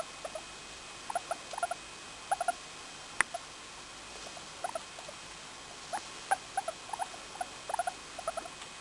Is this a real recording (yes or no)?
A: yes